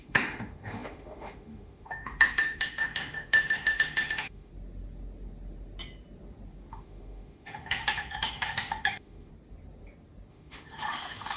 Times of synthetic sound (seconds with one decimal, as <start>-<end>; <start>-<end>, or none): 0.0-4.5; 6.7-9.3; 10.3-11.4